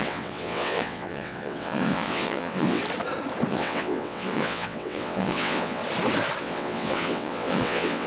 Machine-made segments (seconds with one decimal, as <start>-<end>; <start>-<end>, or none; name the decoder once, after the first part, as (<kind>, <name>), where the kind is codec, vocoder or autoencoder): 0.0-2.8 (vocoder, WaveNeXt); 3.5-5.8; 6.4-8.1